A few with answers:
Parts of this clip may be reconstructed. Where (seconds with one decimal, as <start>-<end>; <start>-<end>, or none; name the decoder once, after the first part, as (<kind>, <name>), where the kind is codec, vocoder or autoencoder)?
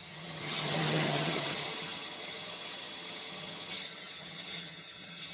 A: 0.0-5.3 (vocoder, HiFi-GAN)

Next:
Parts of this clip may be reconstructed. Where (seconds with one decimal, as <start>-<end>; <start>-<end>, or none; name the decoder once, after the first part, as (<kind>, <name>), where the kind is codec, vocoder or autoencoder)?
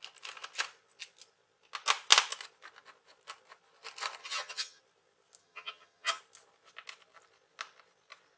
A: 4.2-4.8 (vocoder, HiFi-GAN); 5.4-6.2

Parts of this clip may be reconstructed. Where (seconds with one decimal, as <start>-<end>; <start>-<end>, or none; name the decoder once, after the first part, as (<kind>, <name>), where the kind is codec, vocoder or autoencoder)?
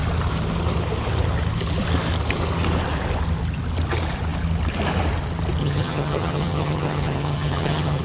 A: 5.6-8.0 (vocoder, HiFi-GAN)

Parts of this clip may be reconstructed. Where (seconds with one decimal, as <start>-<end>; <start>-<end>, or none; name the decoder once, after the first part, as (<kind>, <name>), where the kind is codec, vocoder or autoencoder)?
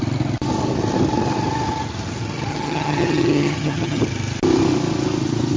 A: 2.5-4.0 (vocoder, HiFi-GAN)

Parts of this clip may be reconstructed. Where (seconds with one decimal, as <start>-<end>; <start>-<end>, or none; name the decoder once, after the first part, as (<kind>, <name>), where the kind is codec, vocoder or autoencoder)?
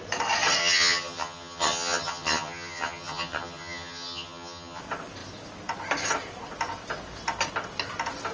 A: 0.6-4.8 (vocoder, HiFi-GAN)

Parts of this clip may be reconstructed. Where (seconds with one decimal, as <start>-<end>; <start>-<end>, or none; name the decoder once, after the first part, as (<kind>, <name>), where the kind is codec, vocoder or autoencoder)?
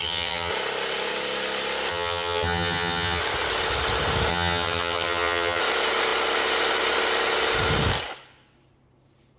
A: 0.0-0.5 (vocoder, HiFi-GAN); 1.9-3.2; 4.3-5.6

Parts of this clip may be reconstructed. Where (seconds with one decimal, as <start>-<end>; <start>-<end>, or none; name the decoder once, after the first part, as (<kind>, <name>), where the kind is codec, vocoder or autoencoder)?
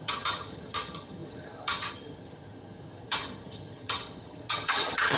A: 0.0-5.2 (vocoder, HiFi-GAN)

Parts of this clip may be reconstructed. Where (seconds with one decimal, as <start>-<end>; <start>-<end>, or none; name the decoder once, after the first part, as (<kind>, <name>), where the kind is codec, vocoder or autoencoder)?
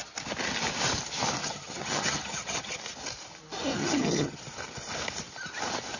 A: 1.4-2.8 (vocoder, HiFi-GAN); 3.8-4.4